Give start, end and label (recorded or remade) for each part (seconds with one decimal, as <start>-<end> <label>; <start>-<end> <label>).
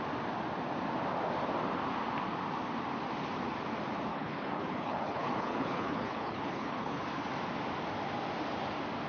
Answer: 0.0-4.1 recorded; 4.1-7.0 remade; 7.0-9.1 recorded